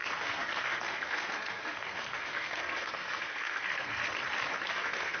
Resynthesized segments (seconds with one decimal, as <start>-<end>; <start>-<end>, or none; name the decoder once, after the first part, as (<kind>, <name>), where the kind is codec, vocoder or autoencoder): 0.0-4.1 (codec, SNAC); 4.7-5.2